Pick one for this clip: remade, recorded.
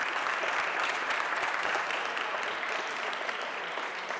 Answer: remade